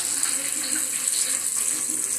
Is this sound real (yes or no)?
yes